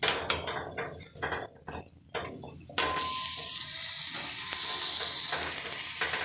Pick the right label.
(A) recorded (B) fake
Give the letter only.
A